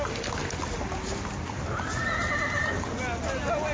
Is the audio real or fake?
real